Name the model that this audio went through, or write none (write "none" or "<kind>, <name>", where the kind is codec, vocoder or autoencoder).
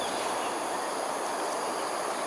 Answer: none